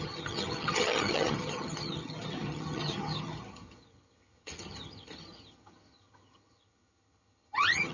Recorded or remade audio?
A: remade